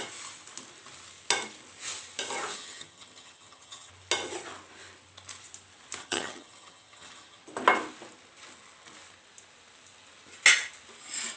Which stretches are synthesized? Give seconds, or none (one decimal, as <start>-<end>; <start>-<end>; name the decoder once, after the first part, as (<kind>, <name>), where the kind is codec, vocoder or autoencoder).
2.5-3.9 (vocoder, HiFi-GAN); 6.0-7.4

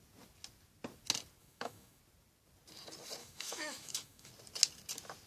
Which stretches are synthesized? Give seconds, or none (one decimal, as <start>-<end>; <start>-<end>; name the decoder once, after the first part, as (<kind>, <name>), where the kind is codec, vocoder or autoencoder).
1.4-2.0 (autoencoder, DAC-VAE); 3.2-4.3